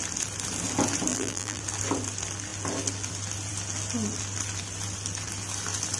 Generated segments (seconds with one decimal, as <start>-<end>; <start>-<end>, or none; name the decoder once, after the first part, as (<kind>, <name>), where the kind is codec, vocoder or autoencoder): 1.1-1.6 (vocoder, BigVGAN v2)